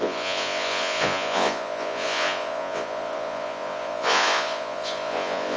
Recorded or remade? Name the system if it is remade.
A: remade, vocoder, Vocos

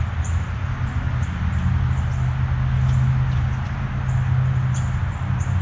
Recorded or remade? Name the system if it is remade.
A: recorded